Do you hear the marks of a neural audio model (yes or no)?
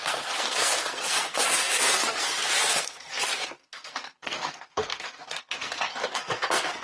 yes